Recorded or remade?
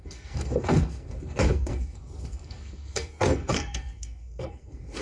remade